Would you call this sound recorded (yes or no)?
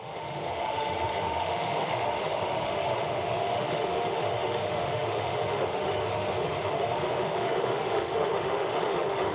no